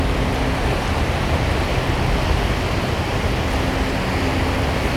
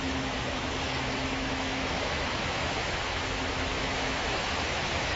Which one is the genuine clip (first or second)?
first